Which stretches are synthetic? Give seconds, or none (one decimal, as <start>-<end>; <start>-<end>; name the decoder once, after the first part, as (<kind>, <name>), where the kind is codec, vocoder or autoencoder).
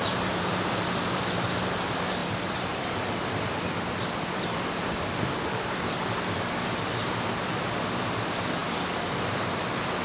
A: 2.2-6.9 (vocoder, BigVGAN v2); 8.6-10.0